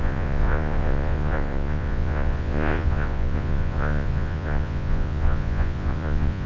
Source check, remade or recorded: remade